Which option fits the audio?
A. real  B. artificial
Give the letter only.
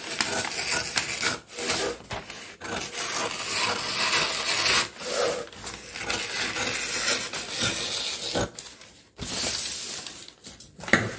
A